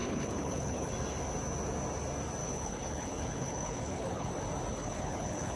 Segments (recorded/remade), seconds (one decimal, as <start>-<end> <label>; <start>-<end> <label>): 0.0-0.9 remade; 0.9-2.4 recorded; 2.4-4.3 remade; 4.3-4.7 recorded; 4.7-5.6 remade